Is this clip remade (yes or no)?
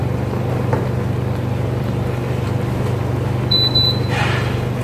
yes